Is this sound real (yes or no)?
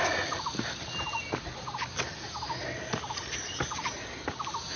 yes